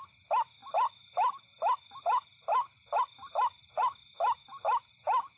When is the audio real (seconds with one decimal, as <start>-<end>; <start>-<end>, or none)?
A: 0.0-5.4